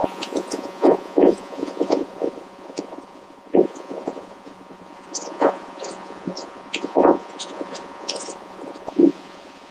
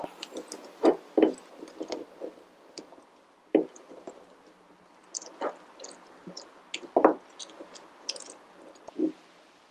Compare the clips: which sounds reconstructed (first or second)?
first